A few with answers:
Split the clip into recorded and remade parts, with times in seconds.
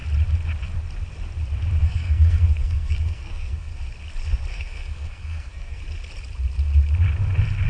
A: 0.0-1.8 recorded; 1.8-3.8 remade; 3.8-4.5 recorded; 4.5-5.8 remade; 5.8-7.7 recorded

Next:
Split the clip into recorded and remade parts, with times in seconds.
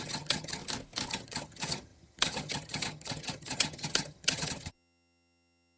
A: 0.0-0.6 remade; 0.6-1.1 recorded; 1.1-5.8 remade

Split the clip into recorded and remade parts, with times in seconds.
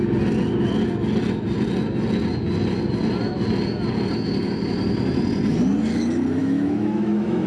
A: 0.0-6.4 recorded; 6.4-7.5 remade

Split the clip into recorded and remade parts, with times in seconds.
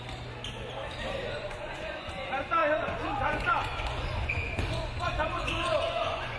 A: 0.0-1.2 recorded; 1.2-2.1 remade; 2.1-2.6 recorded; 2.6-6.4 remade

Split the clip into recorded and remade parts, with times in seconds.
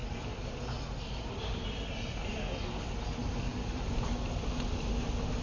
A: 0.0-5.4 recorded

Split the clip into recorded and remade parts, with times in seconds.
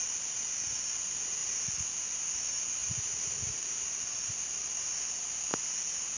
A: 0.0-1.4 recorded; 1.4-2.4 remade; 2.4-6.2 recorded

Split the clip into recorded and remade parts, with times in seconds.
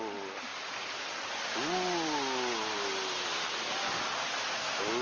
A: 0.0-5.0 recorded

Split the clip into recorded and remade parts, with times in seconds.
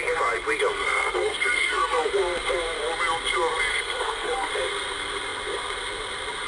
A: 0.0-0.7 recorded; 0.7-2.1 remade; 2.1-3.7 recorded; 3.7-4.5 remade; 4.5-6.5 recorded